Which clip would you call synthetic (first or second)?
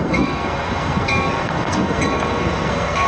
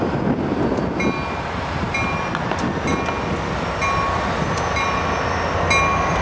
first